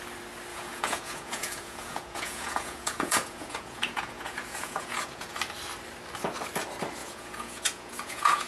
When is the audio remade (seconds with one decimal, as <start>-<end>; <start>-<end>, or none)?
0.5-5.4; 7.0-8.5